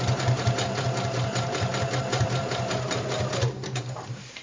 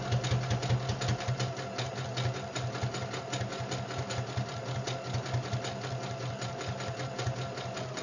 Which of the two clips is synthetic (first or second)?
first